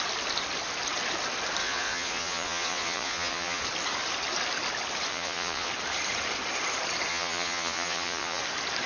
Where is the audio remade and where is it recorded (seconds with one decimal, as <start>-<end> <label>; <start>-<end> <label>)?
0.0-1.6 recorded; 1.6-3.6 remade; 3.6-5.1 recorded; 5.1-5.7 remade; 5.7-7.1 recorded; 7.1-8.4 remade; 8.4-8.9 recorded